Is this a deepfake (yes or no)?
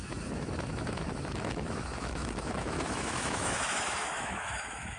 yes